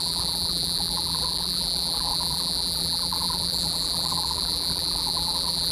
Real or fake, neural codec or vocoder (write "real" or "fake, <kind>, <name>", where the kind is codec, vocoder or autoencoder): fake, vocoder, BigVGAN v2